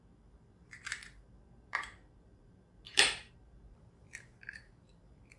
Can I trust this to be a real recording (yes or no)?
no